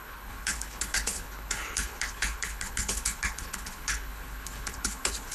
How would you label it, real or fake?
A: fake